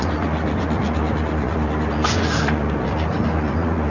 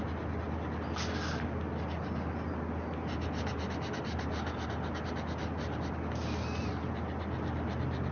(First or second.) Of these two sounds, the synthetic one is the first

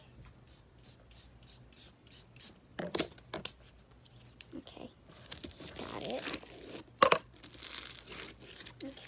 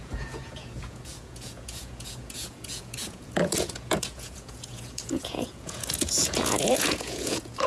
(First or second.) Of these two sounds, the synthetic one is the second